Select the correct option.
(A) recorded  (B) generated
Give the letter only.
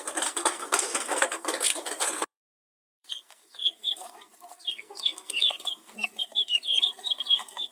B